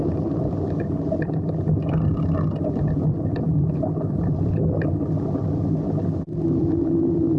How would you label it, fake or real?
real